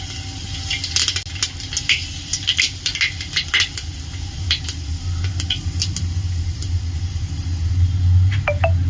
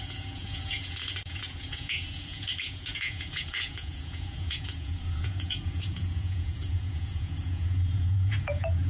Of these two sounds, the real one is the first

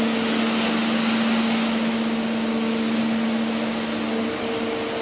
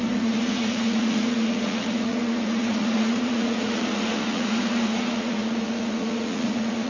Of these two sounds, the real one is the first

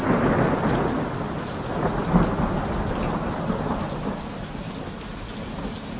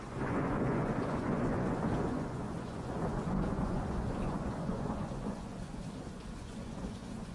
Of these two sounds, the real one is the first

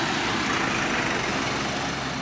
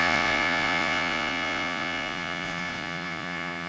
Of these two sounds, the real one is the first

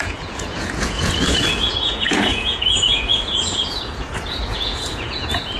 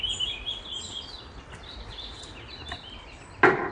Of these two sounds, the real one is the second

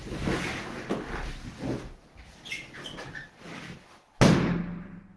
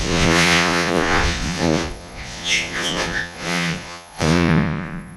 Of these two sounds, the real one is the first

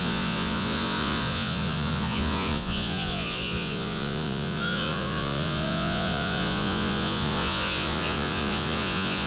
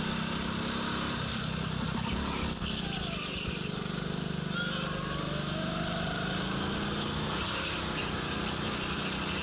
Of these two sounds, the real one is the second